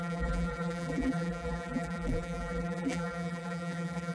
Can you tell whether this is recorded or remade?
remade